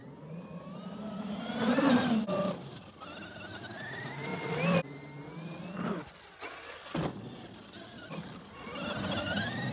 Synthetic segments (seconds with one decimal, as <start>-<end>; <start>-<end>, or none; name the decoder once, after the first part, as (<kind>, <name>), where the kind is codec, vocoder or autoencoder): 0.0-3.0 (vocoder, BigVGAN v2)